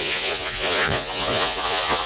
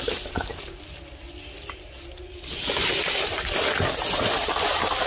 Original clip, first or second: second